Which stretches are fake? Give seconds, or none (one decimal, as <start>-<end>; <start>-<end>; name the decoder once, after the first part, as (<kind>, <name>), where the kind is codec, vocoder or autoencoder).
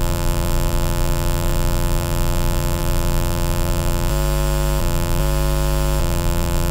0.0-4.1 (vocoder, BigVGAN v2); 4.8-5.2; 6.0-6.7